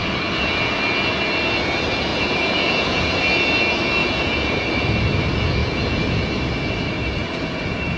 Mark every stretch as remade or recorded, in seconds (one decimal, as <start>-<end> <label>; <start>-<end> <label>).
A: 0.0-2.1 recorded; 2.1-3.2 remade; 3.2-4.0 recorded; 4.0-4.6 remade; 4.6-5.6 recorded; 5.6-6.3 remade; 6.3-7.2 recorded; 7.2-8.0 remade